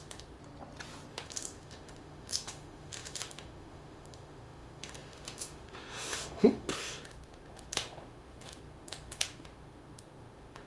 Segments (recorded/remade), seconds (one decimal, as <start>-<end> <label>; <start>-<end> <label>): 0.0-0.4 remade; 0.4-1.1 recorded; 1.1-10.7 remade